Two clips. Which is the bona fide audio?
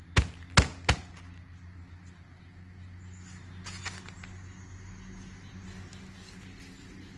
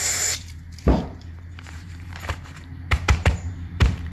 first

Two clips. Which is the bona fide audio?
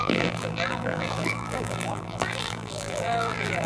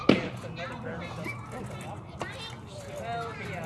second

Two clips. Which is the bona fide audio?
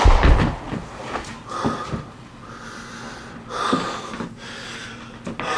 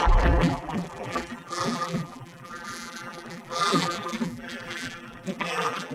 first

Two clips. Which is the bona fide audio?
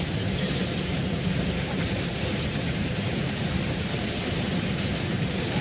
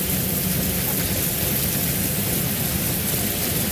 second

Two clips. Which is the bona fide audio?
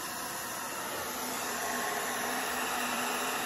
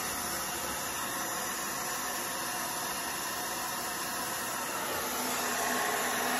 second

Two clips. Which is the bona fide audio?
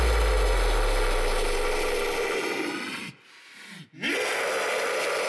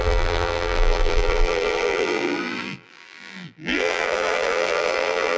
first